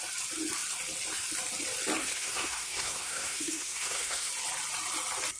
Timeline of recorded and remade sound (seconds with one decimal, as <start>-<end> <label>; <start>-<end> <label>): 0.0-2.0 recorded; 2.0-4.3 remade; 4.3-5.4 recorded